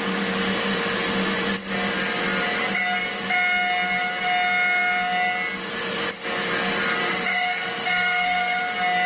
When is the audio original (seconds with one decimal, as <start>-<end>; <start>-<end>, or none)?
0.0-7.3; 8.6-9.1